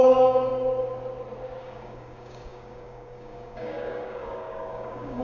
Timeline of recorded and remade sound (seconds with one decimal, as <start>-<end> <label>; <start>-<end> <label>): 0.0-0.5 remade; 0.5-1.6 recorded; 1.6-5.2 remade